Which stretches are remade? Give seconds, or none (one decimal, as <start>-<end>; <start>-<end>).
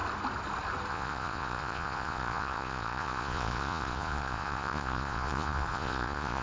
0.9-6.4